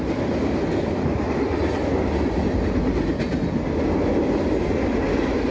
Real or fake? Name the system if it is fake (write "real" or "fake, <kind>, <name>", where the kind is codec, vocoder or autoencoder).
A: real